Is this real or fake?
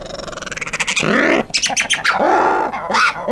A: real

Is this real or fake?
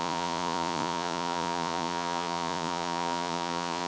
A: fake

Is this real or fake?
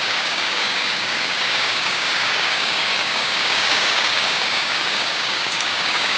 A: fake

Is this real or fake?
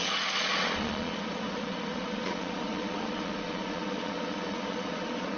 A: fake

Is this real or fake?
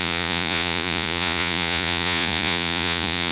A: fake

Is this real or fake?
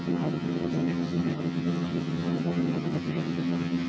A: fake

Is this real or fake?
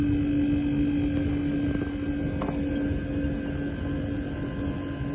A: real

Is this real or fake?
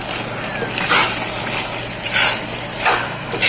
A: real